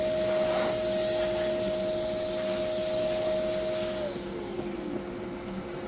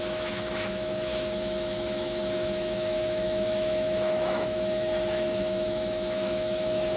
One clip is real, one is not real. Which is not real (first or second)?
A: second